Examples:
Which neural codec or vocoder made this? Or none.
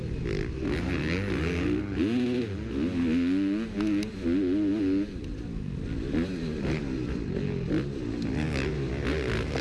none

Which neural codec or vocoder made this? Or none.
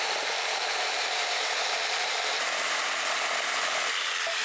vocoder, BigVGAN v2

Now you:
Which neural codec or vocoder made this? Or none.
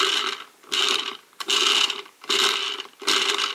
none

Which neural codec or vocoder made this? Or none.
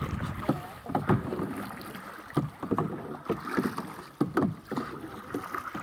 none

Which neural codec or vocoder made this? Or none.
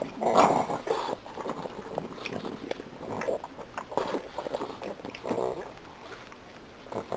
none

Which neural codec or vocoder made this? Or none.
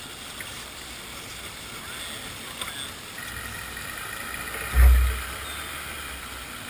none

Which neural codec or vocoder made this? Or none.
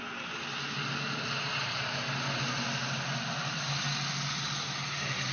none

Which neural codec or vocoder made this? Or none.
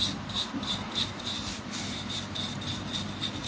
none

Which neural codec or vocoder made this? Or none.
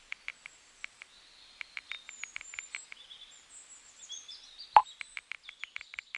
none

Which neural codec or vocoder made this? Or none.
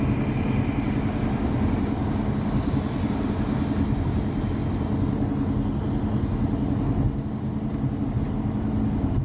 none